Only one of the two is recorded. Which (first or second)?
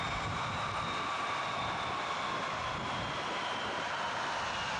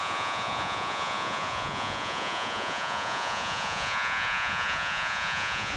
first